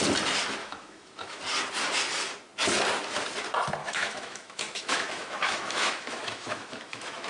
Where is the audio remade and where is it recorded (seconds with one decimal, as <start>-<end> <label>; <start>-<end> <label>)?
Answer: 0.0-0.6 recorded; 0.6-1.4 remade; 1.4-3.8 recorded; 3.8-7.3 remade